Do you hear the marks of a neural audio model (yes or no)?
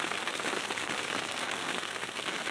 yes